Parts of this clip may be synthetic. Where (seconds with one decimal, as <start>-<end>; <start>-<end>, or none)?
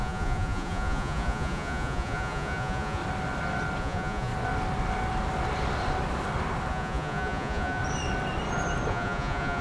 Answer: 0.0-3.0; 3.8-4.3; 6.7-7.8; 8.9-9.6